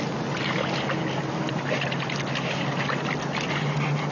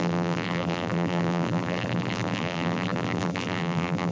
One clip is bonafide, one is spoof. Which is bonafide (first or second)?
first